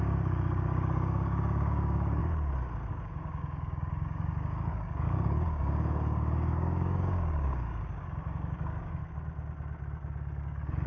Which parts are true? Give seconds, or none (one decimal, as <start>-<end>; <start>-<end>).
2.2-2.9; 9.0-10.4